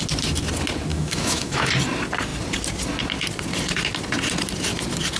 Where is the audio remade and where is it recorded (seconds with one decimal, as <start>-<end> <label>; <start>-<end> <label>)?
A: 0.0-0.9 recorded; 0.9-1.7 remade; 1.7-5.2 recorded